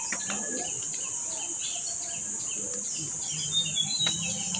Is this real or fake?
real